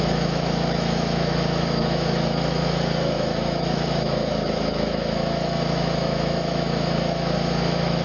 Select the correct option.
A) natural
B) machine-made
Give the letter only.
B